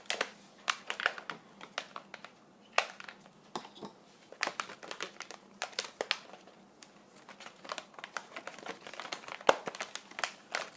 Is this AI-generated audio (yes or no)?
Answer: no